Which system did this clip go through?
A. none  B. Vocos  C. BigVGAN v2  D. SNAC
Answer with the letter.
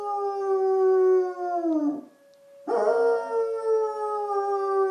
A